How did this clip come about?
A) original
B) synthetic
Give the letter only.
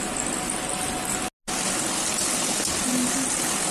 A